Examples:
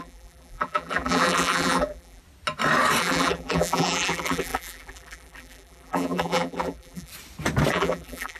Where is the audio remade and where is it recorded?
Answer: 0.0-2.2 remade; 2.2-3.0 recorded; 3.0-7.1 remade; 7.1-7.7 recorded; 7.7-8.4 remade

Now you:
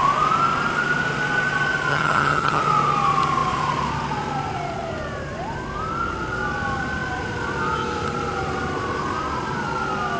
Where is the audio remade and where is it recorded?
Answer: 0.0-1.9 recorded; 1.9-2.6 remade; 2.6-10.2 recorded

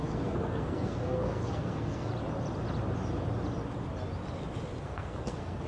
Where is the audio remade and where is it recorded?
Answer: 0.0-2.1 remade; 2.1-4.8 recorded; 4.8-5.7 remade

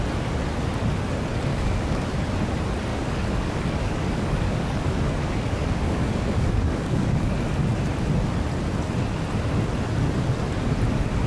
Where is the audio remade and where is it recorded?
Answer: 0.0-1.5 recorded; 1.5-2.2 remade; 2.2-2.9 recorded; 2.9-7.3 remade; 7.3-11.3 recorded

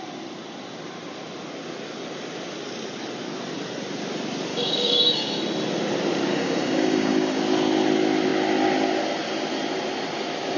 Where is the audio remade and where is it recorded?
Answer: 0.0-4.5 recorded; 4.5-5.4 remade; 5.4-6.3 recorded; 6.3-7.4 remade; 7.4-10.6 recorded